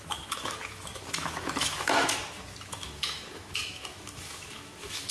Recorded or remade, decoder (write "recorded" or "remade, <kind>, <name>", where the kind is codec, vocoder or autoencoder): remade, autoencoder, DAC-VAE